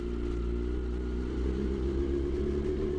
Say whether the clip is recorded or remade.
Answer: recorded